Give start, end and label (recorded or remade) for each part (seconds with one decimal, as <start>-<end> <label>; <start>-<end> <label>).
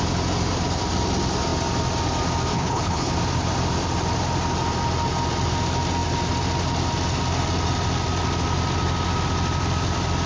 0.0-2.5 recorded; 2.5-3.1 remade; 3.1-10.3 recorded